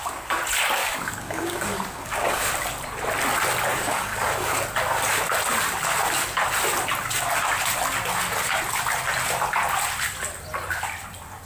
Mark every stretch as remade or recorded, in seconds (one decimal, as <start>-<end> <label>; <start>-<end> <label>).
0.0-0.8 recorded; 0.8-2.5 remade; 2.5-3.7 recorded; 3.7-4.6 remade; 4.6-11.4 recorded